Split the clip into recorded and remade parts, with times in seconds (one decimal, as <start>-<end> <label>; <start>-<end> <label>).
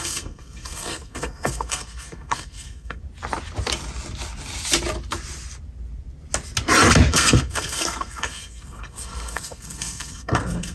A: 0.0-3.0 remade; 3.0-7.1 recorded; 7.1-10.7 remade